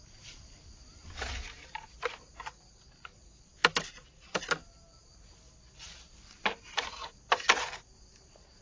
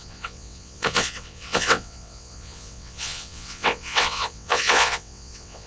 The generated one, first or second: second